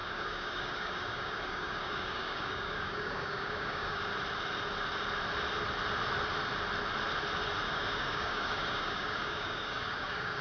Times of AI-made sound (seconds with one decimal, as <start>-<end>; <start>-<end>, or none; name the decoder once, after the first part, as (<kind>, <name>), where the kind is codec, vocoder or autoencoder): 0.0-4.1 (codec, DAC); 7.7-10.4